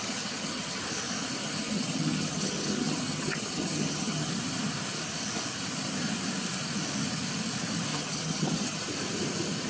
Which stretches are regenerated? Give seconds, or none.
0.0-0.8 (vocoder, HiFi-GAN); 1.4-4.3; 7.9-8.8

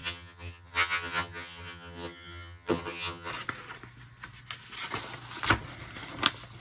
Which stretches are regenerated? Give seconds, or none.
0.0-3.3 (vocoder, HiFi-GAN)

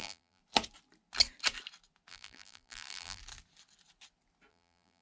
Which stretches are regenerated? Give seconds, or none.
0.0-0.4 (vocoder, BigVGAN v2); 2.1-3.2; 4.5-5.0

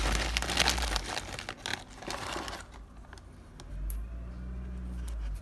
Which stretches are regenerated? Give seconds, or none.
none

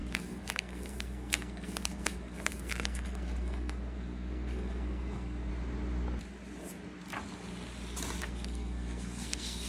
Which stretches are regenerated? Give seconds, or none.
0.0-5.5 (codec, SNAC); 8.2-9.7

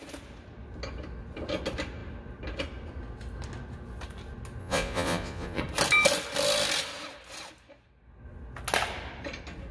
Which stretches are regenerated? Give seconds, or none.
4.6-5.6 (vocoder, Vocos)

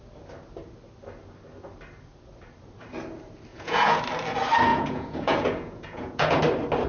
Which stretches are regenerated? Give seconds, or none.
3.5-4.0 (vocoder, Vocos); 4.7-6.4

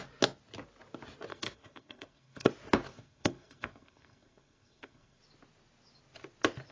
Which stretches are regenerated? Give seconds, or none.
1.3-2.5 (codec, SNAC); 2.9-5.2